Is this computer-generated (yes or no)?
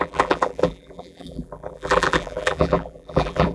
yes